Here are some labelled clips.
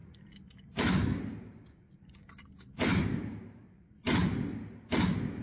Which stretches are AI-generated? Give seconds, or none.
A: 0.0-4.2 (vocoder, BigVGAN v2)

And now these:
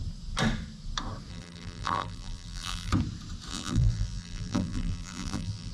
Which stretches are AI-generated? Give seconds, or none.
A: 1.3-2.9 (vocoder, BigVGAN v2); 3.5-5.7

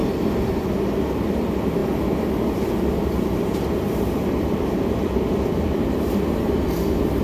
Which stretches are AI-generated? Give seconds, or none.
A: 0.0-0.5 (vocoder, BigVGAN v2); 1.8-6.1

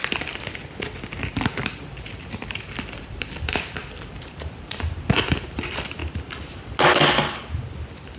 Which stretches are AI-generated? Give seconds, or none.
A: 1.5-4.8 (vocoder, BigVGAN v2); 6.0-6.7

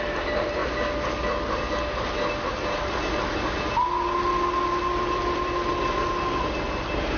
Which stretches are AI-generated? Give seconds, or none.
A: 0.0-0.6 (vocoder, BigVGAN v2); 4.9-5.7; 6.8-7.2

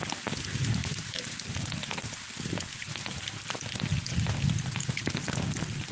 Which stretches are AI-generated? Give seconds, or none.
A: 0.8-1.9 (vocoder, BigVGAN v2); 4.8-5.3

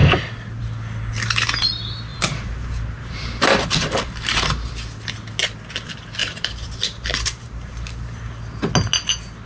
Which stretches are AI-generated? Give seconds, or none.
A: 2.1-4.7 (vocoder, BigVGAN v2); 6.2-8.3